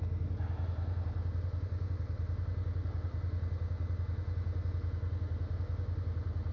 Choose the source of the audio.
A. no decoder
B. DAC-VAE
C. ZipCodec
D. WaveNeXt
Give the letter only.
A